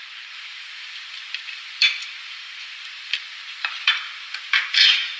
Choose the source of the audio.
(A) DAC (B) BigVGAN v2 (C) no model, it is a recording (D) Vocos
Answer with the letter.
B